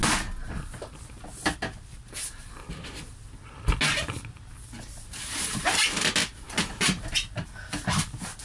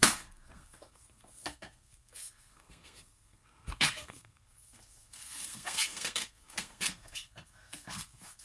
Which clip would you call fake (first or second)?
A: second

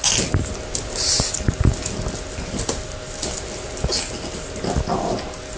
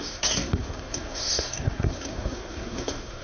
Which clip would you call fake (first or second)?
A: second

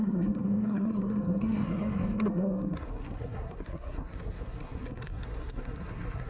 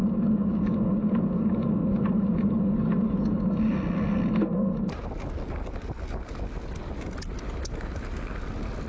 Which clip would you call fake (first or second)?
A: first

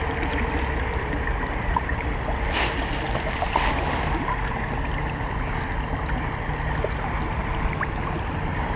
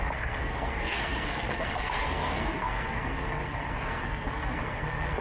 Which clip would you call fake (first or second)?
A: second